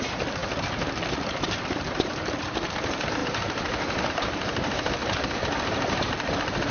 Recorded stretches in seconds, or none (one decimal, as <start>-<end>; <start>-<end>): none